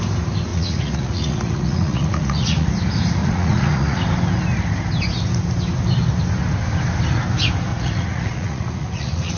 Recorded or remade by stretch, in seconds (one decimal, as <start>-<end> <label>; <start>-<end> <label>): 0.0-0.5 recorded; 0.5-2.7 remade; 2.7-3.2 recorded; 3.2-4.0 remade; 4.0-7.7 recorded; 7.7-9.4 remade